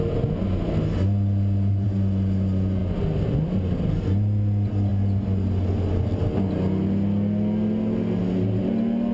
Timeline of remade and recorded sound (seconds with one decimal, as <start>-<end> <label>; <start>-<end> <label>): 0.0-9.1 recorded